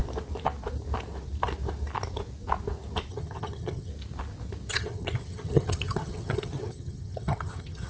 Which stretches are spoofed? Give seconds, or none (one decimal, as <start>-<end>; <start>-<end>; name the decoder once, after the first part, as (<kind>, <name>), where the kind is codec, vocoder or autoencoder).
3.1-3.9 (vocoder, HiFi-GAN); 4.7-7.9